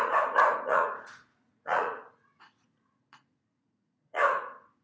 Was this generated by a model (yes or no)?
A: yes